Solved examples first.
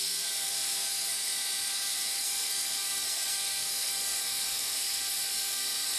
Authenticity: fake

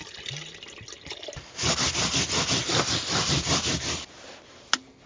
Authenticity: real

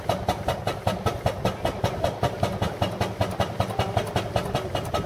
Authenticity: real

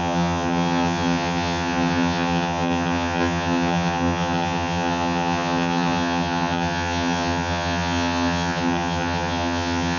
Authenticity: fake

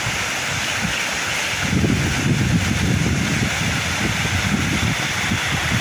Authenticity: real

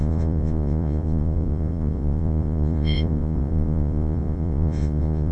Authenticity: fake